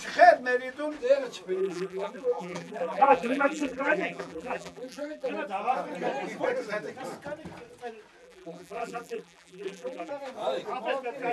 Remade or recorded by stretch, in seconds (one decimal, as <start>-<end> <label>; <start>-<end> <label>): 0.0-1.6 recorded; 1.6-5.3 remade; 5.3-8.2 recorded; 8.2-10.1 remade; 10.1-11.3 recorded